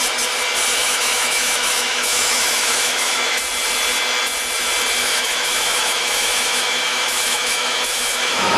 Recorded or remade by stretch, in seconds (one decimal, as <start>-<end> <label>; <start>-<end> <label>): 0.0-0.8 recorded; 0.8-3.4 remade; 3.4-5.0 recorded; 5.0-8.6 remade